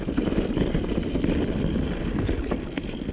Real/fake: real